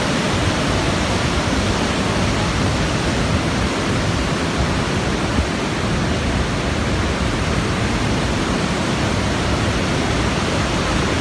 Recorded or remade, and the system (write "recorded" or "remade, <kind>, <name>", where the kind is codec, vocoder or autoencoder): recorded